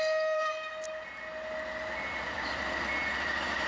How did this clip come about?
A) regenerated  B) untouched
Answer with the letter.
B